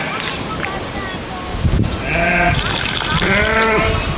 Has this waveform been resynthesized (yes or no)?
no